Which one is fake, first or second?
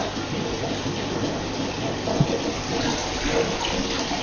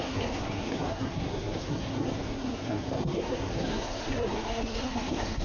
second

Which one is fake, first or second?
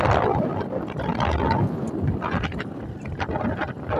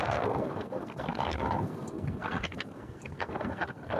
second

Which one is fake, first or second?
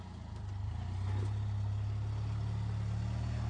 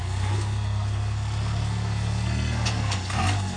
second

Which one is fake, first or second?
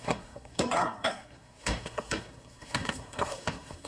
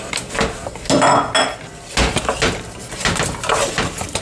first